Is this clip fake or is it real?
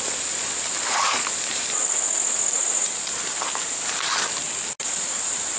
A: real